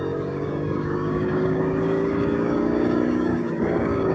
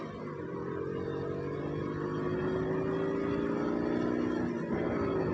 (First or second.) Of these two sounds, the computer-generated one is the first